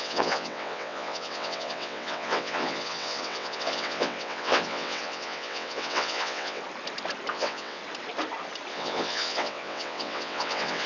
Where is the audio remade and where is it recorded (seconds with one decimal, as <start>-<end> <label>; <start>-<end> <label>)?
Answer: 0.0-6.6 remade; 6.6-7.3 recorded; 7.3-7.8 remade; 7.8-8.7 recorded; 8.7-10.9 remade